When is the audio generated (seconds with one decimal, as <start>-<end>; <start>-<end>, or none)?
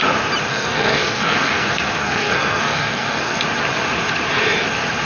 0.5-3.4